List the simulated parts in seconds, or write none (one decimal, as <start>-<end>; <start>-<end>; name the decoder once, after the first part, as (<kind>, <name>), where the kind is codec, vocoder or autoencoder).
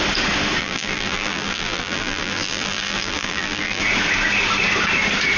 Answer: 0.6-3.8 (vocoder, BigVGAN v2)